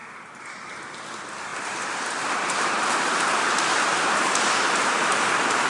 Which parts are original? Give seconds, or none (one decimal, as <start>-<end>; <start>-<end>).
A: 1.0-1.5; 4.9-5.7

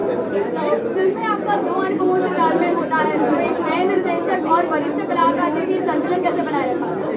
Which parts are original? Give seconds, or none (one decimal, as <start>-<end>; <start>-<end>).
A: 2.0-7.2

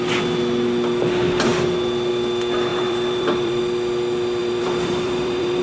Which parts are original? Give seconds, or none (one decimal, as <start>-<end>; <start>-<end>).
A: 0.0-2.7; 3.6-4.4